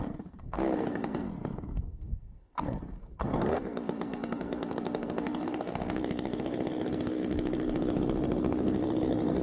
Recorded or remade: remade